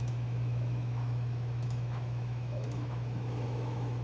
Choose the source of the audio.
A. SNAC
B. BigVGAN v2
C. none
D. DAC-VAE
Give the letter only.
D